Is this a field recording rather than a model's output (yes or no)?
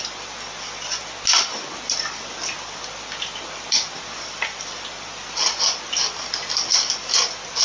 yes